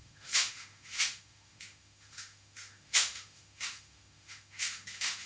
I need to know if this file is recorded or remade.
remade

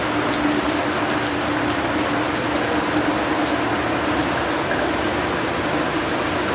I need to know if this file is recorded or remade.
recorded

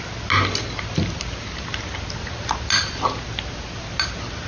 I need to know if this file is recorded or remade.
recorded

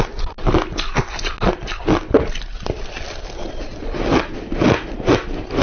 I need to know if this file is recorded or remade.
recorded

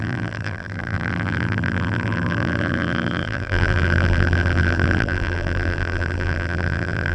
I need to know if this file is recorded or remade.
remade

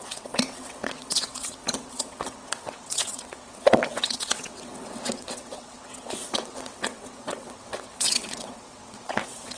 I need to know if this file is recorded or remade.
remade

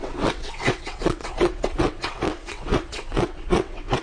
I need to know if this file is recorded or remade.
remade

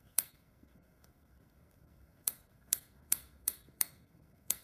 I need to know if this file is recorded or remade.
remade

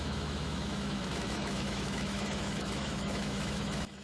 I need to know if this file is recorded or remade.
remade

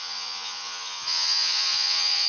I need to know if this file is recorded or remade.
remade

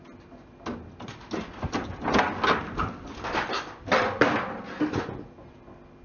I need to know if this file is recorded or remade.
recorded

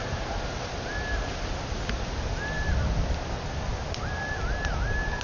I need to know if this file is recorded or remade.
recorded